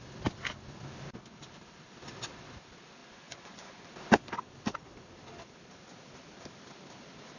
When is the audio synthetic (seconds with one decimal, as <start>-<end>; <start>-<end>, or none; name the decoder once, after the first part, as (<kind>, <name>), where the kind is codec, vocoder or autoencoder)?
3.0-3.9 (vocoder, Vocos)